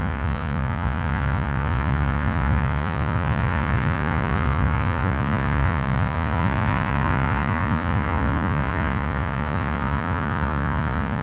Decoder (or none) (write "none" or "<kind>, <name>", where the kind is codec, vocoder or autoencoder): vocoder, Vocos